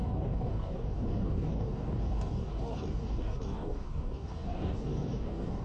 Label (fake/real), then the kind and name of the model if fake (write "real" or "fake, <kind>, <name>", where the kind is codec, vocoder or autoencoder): fake, codec, DAC